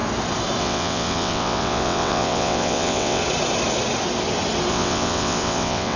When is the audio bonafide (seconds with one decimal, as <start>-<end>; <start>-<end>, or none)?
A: 0.0-0.6; 3.2-4.7